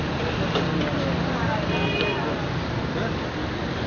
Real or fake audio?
real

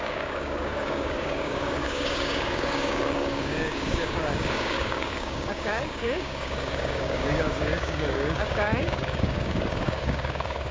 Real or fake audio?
fake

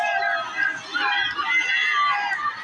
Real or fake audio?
real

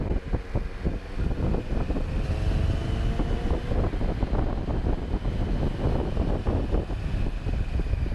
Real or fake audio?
real